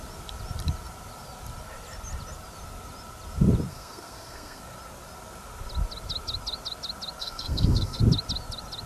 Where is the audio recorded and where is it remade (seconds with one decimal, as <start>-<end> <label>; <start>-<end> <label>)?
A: 0.0-3.7 recorded; 3.7-4.6 remade; 4.6-7.2 recorded; 7.2-8.0 remade; 8.0-8.9 recorded